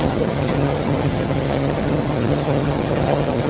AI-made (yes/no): yes